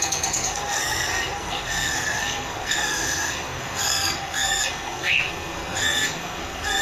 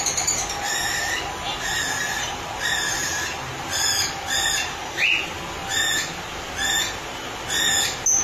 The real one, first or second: second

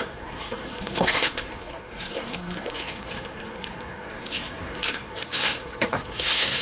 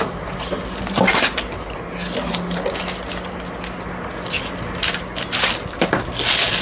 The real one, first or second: second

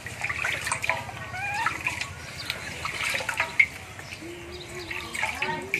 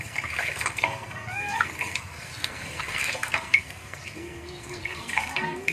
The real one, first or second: first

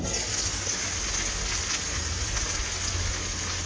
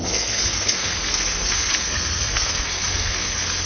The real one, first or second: first